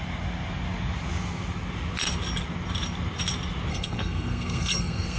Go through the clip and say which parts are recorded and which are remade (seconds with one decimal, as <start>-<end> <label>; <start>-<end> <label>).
0.0-3.7 recorded; 3.7-5.2 remade